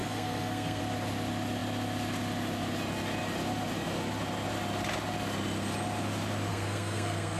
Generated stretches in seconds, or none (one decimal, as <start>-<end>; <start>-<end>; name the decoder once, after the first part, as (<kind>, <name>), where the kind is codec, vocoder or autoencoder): 0.0-0.8 (codec, SNAC); 6.5-7.4